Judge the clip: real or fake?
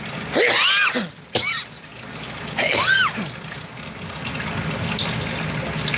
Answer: real